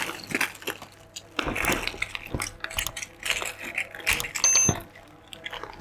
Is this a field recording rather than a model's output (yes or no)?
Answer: yes